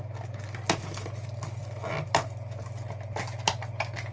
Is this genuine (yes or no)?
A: yes